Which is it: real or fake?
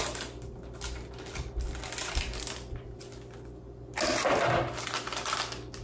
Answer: real